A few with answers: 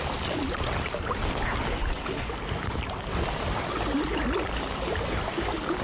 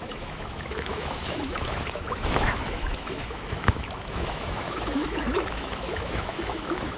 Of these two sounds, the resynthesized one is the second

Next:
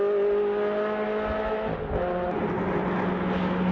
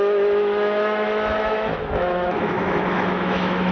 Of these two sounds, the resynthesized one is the second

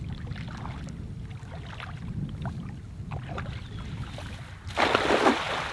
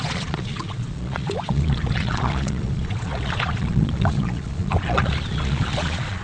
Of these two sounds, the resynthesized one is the second